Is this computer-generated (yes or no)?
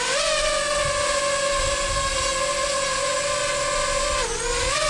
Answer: no